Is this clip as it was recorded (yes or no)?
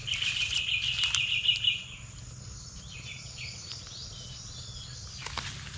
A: yes